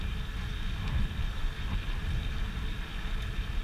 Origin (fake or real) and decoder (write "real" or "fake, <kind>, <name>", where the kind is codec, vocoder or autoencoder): real